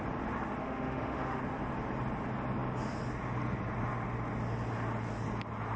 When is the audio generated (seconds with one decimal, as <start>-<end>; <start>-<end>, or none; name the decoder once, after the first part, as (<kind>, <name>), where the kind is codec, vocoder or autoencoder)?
0.6-1.4 (autoencoder, DAC-VAE)